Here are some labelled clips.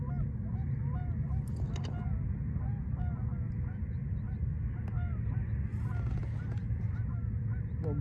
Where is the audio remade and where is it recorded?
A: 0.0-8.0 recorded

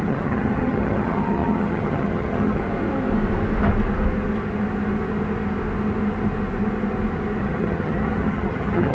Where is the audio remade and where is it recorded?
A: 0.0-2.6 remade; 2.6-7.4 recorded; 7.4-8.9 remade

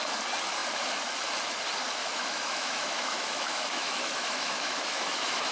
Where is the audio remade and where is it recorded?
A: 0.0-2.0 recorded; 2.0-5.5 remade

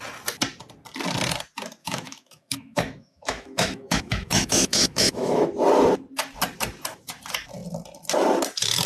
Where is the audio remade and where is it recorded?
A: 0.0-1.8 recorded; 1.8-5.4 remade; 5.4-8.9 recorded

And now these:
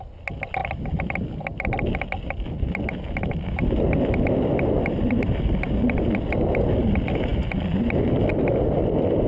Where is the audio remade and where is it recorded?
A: 0.0-9.3 recorded